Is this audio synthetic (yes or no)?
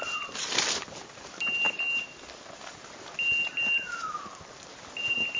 no